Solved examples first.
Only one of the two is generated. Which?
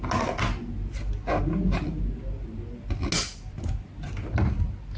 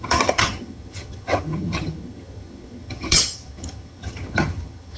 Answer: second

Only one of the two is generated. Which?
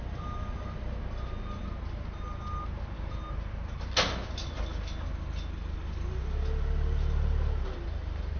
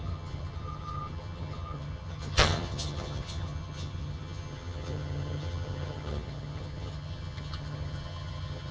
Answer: second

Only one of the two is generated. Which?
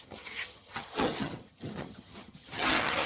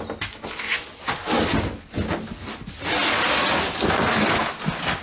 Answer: first